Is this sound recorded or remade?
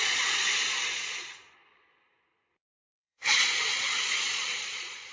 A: remade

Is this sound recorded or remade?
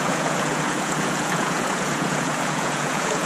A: remade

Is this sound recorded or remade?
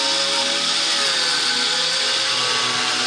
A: recorded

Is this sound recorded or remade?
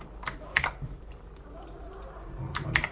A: recorded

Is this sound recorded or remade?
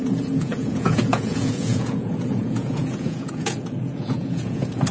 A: remade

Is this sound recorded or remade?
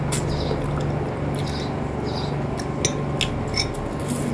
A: recorded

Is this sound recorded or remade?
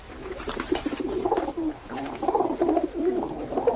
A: remade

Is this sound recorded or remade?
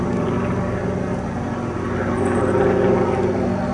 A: recorded